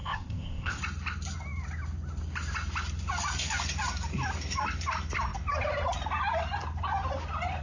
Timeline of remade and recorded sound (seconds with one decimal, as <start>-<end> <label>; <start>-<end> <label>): 0.0-0.8 remade; 0.8-7.6 recorded